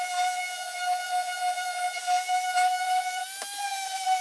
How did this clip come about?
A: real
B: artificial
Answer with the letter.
B